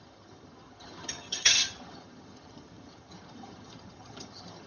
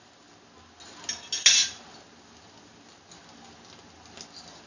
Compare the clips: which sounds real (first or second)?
second